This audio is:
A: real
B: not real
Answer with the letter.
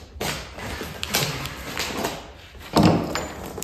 A